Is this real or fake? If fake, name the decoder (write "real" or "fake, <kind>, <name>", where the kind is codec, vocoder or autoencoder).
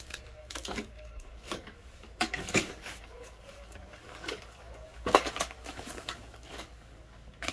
fake, codec, DAC